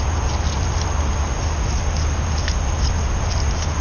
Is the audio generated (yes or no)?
no